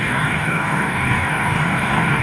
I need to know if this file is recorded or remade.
remade